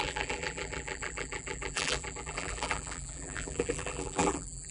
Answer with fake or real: fake